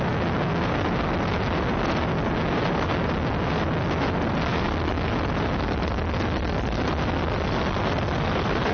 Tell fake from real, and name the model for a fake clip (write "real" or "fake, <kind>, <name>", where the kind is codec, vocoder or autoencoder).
real